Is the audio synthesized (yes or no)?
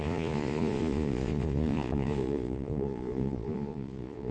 yes